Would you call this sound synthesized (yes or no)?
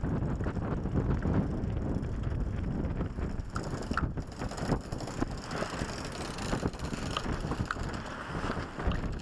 no